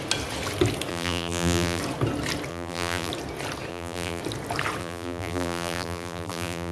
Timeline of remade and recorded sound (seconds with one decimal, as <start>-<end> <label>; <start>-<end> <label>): 0.0-0.9 recorded; 0.9-1.8 remade; 1.8-2.5 recorded; 2.5-3.1 remade; 3.1-3.7 recorded; 3.7-4.2 remade; 4.2-4.8 recorded; 4.8-6.7 remade